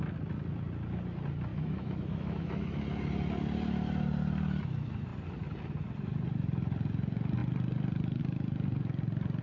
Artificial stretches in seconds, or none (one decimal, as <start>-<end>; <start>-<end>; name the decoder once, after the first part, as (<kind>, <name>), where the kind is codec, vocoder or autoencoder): 1.5-2.8 (autoencoder, DAC-VAE)